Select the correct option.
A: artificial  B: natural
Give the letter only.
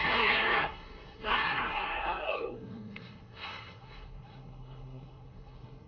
A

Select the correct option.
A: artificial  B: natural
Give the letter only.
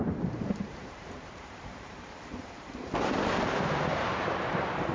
A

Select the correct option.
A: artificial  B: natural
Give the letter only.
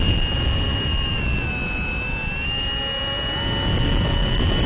B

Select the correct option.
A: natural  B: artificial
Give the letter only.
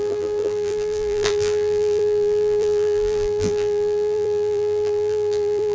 B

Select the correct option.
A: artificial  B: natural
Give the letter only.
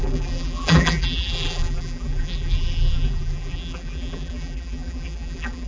A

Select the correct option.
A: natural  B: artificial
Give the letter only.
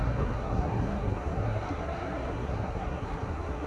B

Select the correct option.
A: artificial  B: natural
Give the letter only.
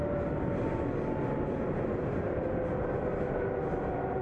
B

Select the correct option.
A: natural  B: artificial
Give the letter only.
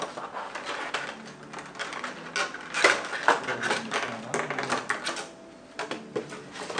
A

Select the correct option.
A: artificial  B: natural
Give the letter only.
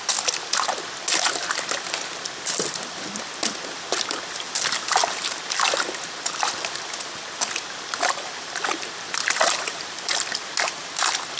B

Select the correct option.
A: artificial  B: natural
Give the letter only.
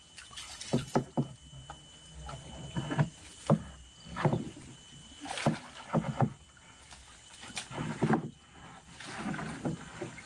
B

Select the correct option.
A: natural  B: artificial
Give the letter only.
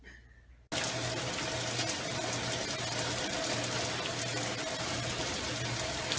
A